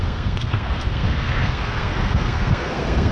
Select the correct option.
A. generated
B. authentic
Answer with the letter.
A